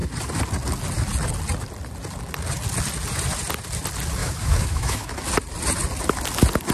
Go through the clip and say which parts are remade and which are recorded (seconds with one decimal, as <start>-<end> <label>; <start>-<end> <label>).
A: 0.0-4.2 recorded; 4.2-5.1 remade; 5.1-6.7 recorded